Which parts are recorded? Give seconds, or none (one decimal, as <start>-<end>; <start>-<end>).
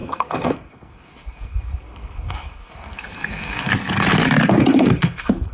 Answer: 3.7-4.5